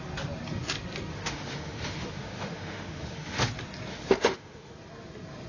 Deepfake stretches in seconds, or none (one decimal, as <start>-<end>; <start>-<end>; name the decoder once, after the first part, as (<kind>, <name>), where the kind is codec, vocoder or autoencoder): 1.1-3.5 (autoencoder, DAC-VAE); 3.9-4.7